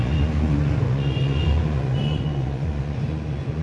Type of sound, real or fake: fake